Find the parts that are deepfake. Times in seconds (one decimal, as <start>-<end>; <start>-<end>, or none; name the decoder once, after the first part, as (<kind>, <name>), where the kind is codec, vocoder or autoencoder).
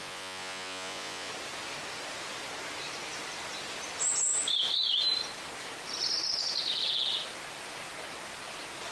0.0-1.3 (vocoder, Vocos)